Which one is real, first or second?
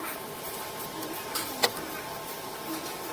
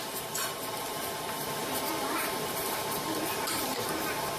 first